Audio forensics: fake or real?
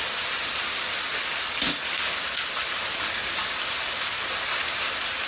real